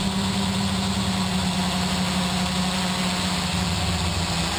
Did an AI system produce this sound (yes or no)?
no